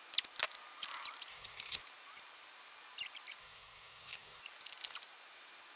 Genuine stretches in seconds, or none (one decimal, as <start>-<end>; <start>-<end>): 0.0-1.3; 1.8-3.4; 4.4-5.8